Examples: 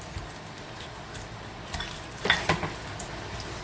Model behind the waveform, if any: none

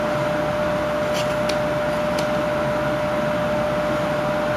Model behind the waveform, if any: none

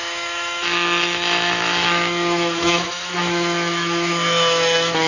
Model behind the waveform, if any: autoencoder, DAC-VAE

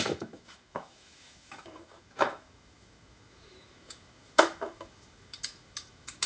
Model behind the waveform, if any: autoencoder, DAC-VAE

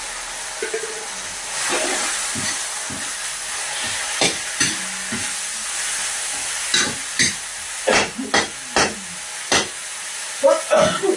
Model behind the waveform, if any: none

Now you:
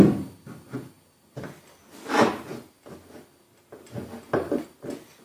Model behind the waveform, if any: none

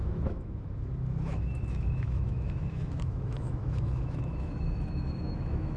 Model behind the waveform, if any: autoencoder, DAC-VAE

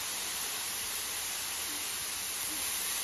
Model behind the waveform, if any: none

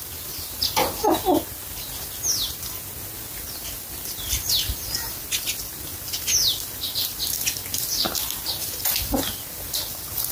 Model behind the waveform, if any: none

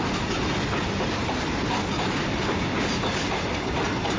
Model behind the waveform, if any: none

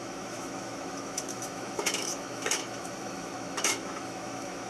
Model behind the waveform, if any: autoencoder, DAC-VAE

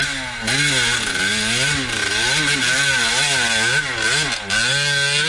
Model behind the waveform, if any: none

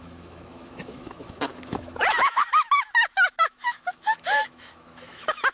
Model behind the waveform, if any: autoencoder, DAC-VAE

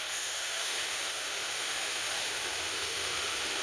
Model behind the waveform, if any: autoencoder, DAC-VAE